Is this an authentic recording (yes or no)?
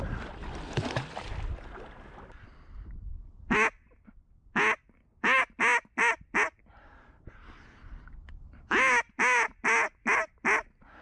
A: yes